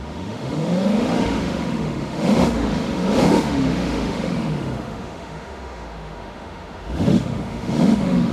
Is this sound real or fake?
fake